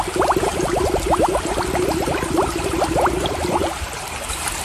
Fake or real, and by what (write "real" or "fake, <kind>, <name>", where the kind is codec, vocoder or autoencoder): real